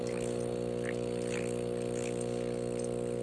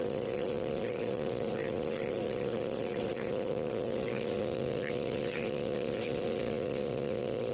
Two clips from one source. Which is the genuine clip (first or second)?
first